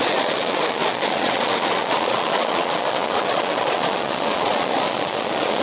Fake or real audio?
fake